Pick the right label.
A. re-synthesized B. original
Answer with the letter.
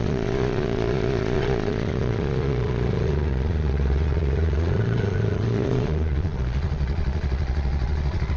A